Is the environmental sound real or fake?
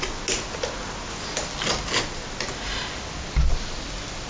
real